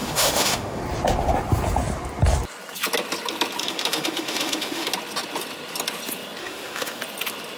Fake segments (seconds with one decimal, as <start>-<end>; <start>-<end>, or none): 0.0-0.8; 3.6-4.9; 6.4-7.0